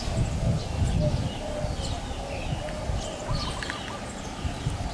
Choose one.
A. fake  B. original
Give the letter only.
B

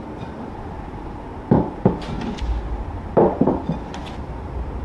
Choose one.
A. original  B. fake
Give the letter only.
A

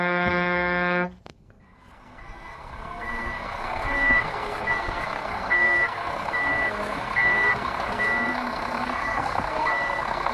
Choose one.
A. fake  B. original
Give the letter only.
A